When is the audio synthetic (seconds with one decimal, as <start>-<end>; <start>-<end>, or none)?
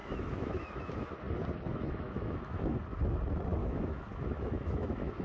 0.0-1.1; 1.7-2.7; 3.6-5.2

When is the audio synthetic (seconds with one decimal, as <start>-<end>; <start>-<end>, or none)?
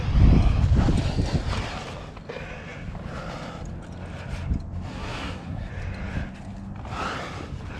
4.9-5.7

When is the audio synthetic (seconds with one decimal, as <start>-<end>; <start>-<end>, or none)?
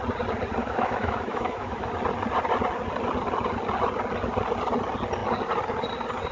0.6-1.9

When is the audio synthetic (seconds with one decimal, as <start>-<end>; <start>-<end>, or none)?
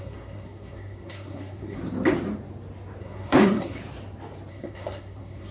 0.0-1.8; 3.0-3.8; 4.5-5.5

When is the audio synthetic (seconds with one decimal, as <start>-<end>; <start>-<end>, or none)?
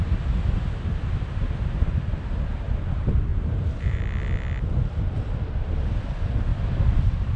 3.3-4.0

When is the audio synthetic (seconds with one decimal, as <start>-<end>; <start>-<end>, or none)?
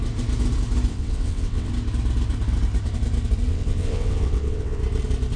0.9-1.7; 3.5-4.8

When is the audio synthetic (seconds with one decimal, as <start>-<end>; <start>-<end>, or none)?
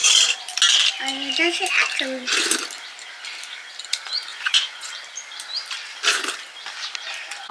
4.3-4.9